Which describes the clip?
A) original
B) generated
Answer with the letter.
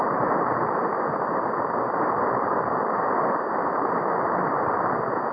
A